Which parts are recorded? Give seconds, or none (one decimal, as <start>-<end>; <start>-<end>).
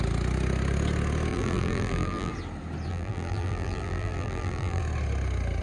0.0-1.3; 2.3-2.9; 4.8-5.6